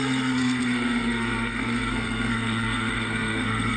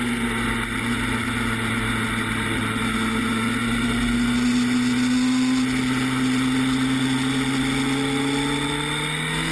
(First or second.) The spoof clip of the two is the first